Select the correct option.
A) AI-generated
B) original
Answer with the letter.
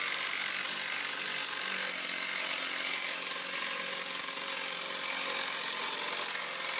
B